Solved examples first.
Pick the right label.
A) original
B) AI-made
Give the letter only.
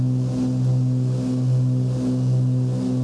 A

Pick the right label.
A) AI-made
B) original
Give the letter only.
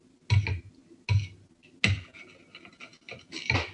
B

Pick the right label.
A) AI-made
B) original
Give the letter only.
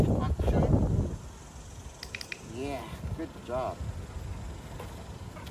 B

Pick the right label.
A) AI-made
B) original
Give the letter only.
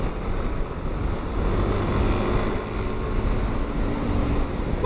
B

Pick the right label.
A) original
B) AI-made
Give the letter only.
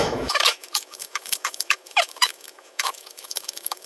B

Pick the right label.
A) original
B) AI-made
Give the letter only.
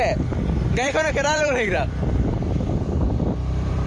B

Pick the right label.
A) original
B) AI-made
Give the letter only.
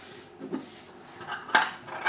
A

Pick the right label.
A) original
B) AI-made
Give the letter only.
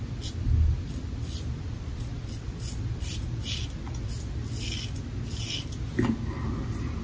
A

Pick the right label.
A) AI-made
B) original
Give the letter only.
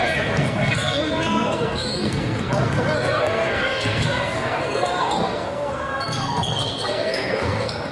A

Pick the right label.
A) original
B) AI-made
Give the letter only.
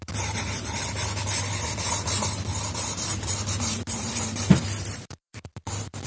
B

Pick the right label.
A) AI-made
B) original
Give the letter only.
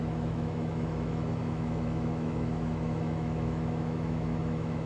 A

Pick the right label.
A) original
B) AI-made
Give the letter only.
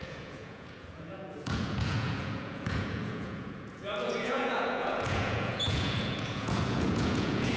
B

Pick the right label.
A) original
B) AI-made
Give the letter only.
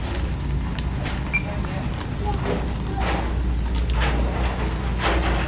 A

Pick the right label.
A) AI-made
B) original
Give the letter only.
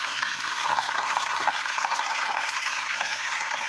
A